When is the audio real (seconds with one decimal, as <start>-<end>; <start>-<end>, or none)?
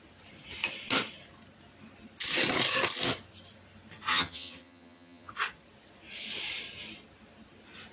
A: 0.0-4.1; 5.3-7.9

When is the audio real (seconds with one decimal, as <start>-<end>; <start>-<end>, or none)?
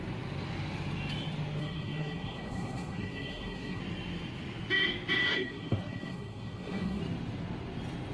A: 0.0-1.6; 3.8-5.2; 7.0-8.1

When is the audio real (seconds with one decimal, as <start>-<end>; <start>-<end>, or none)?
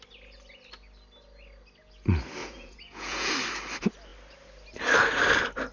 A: 0.0-2.4; 3.3-5.7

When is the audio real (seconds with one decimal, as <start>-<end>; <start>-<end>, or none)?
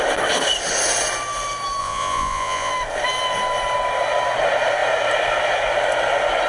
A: 0.0-1.8; 2.7-6.5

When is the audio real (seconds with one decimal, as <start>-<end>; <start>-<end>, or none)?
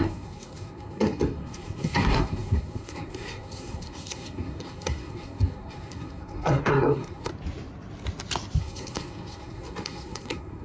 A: 7.3-8.6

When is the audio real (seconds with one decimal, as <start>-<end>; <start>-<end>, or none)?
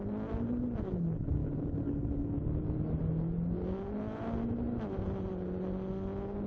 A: 0.0-6.5